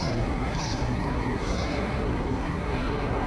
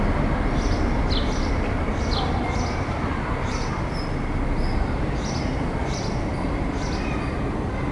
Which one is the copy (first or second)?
first